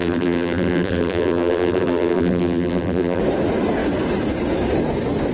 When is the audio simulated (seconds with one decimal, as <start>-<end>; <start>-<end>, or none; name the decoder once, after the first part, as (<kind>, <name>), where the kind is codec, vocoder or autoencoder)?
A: 0.0-3.2 (vocoder, BigVGAN v2)